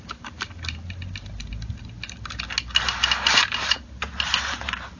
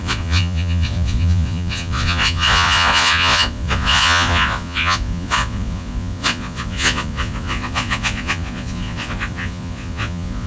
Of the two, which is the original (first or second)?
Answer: first